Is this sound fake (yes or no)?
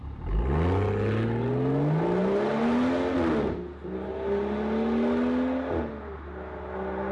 no